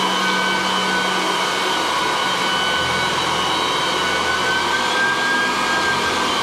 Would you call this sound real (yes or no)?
yes